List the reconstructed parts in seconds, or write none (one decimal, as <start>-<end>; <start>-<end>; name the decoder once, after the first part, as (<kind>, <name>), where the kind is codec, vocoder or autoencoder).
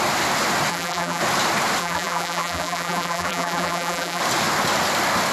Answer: 0.7-1.2 (vocoder, BigVGAN v2); 1.8-4.2